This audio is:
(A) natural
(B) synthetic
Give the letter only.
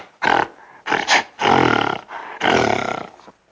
A